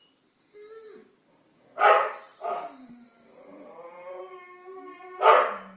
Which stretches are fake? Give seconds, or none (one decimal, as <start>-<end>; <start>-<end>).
1.0-1.9; 2.3-4.4